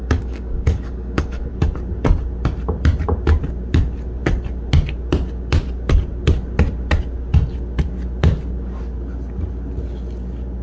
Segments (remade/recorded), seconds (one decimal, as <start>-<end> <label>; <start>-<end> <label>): 0.0-1.5 remade; 1.5-10.6 recorded